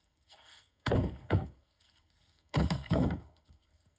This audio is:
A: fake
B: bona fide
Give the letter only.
A